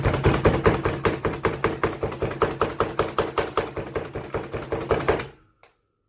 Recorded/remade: recorded